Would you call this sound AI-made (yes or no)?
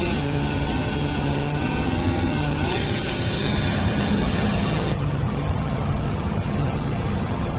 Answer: yes